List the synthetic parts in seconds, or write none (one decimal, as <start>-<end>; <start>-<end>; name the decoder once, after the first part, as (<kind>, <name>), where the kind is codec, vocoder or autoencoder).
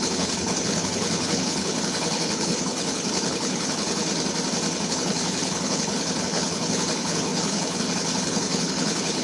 0.0-4.1 (codec, HILCodec); 4.9-9.2